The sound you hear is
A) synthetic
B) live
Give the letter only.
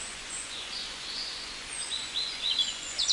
A